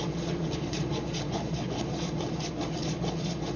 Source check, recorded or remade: remade